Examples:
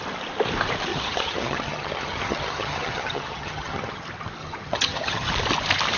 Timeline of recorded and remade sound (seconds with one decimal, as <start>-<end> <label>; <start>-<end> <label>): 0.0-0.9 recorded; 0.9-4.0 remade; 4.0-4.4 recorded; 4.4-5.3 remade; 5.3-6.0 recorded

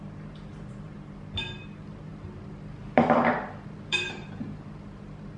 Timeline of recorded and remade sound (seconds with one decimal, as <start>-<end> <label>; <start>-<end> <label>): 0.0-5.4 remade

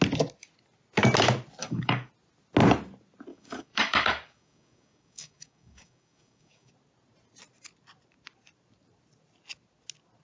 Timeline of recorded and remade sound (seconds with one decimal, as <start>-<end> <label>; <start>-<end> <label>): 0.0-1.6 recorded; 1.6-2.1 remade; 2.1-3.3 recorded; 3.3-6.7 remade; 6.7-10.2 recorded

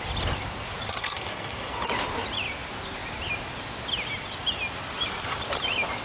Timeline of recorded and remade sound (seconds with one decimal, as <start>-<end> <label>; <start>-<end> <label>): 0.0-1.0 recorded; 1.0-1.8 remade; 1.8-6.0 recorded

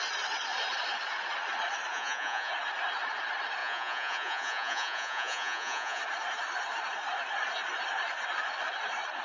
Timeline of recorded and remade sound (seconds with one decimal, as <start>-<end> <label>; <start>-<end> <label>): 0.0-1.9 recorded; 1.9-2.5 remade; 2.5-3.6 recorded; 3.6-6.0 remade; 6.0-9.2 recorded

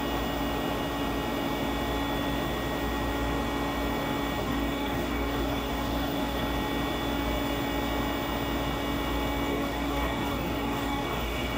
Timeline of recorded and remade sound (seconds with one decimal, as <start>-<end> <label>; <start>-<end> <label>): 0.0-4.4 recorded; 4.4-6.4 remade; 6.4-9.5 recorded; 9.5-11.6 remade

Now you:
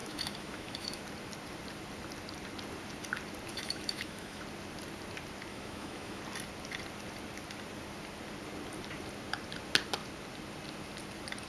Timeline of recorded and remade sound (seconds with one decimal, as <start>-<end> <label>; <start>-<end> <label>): 0.0-1.0 remade; 1.0-3.5 recorded; 3.5-4.4 remade; 4.4-5.5 recorded; 5.5-6.2 remade; 6.2-11.5 recorded

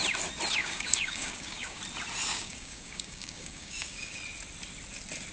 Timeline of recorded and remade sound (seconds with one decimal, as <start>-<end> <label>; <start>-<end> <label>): 0.0-0.6 recorded; 0.6-1.8 remade; 1.8-2.3 recorded; 2.3-4.2 remade; 4.2-5.3 recorded